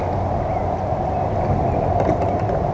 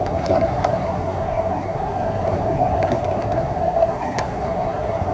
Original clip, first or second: first